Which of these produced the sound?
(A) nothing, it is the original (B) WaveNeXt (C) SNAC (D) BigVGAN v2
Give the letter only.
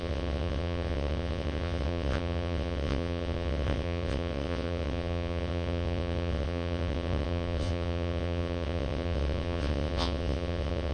B